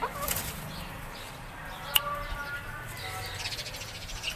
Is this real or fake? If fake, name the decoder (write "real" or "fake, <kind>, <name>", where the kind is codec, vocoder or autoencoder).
real